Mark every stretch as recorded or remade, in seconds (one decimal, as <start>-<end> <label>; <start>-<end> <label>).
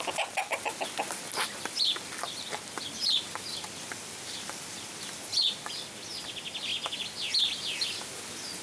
0.0-8.6 recorded